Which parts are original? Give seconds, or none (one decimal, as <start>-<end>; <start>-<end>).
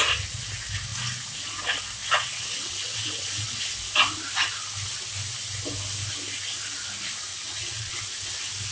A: 0.0-2.0; 3.6-7.3; 7.9-8.7